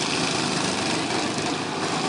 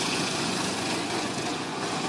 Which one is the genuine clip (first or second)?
first